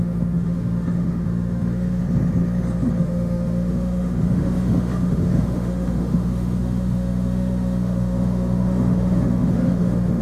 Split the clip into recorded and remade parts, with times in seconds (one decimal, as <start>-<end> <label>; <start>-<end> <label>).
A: 0.0-2.0 remade; 2.0-3.0 recorded; 3.0-10.2 remade